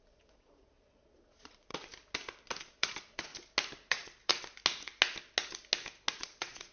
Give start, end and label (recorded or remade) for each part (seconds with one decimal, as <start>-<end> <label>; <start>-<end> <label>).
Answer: 0.0-1.7 remade; 1.7-2.6 recorded; 2.6-3.3 remade; 3.3-3.9 recorded; 3.9-4.3 remade; 4.3-6.1 recorded; 6.1-6.7 remade